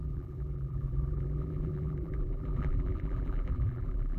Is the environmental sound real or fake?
fake